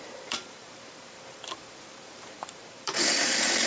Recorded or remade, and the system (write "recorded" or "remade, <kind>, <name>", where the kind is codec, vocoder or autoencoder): remade, vocoder, BigVGAN v2